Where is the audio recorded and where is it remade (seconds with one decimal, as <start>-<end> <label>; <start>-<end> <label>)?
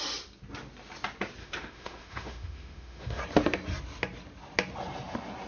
0.0-1.4 recorded; 1.4-3.2 remade; 3.2-5.5 recorded